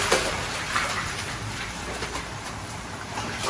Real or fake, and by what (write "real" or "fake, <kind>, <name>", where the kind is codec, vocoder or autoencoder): fake, vocoder, BigVGAN v2